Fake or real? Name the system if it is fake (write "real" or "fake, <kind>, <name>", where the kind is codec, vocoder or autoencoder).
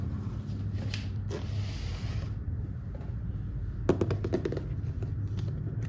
real